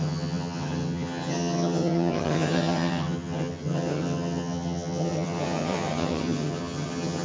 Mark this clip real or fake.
fake